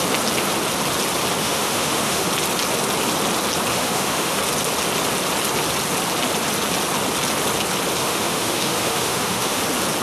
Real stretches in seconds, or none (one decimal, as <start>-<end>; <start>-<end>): 0.0-1.4; 2.3-3.7; 4.4-8.0; 9.6-10.0